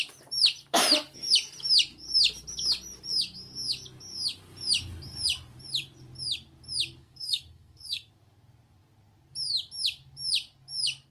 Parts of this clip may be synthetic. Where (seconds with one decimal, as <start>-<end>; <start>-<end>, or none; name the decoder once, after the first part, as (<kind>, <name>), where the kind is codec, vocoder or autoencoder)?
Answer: 7.0-8.1 (codec, SNAC)